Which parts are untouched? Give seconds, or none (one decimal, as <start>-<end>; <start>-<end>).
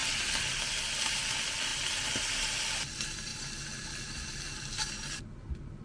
0.0-5.8